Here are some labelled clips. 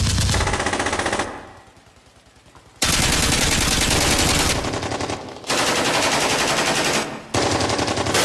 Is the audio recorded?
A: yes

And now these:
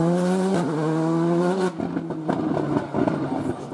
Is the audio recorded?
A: yes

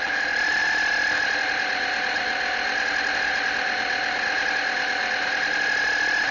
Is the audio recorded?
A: yes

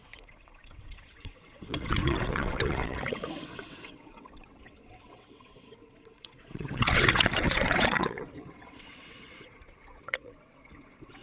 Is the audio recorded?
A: no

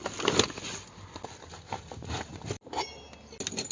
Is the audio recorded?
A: yes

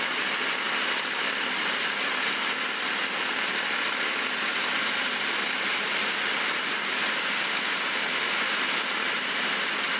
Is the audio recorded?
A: yes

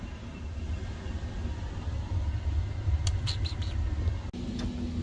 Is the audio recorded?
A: yes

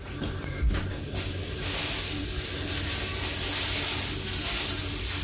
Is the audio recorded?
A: yes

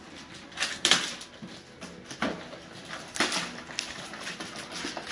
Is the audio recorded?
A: yes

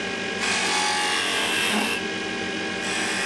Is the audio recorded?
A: yes